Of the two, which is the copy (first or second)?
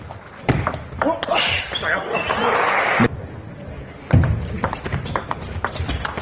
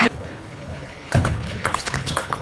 second